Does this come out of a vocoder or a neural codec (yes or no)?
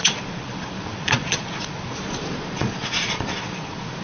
yes